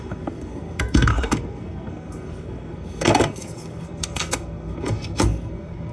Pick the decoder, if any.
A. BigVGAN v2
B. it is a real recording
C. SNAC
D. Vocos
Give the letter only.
C